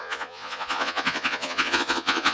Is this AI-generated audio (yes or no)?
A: yes